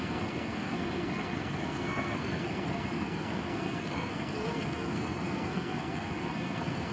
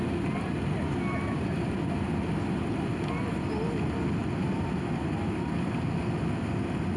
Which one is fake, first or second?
first